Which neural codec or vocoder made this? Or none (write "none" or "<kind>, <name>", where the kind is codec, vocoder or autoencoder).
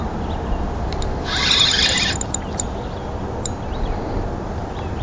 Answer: none